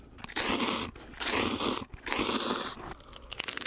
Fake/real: real